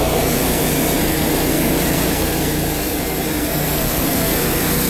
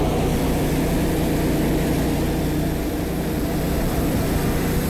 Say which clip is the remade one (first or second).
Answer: first